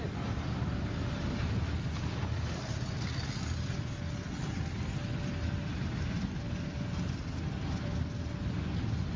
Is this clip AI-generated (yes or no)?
no